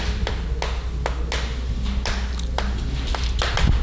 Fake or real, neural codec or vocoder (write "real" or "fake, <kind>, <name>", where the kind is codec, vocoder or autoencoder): real